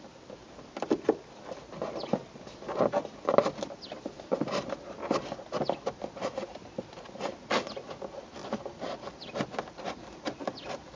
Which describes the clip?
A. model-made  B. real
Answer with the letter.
B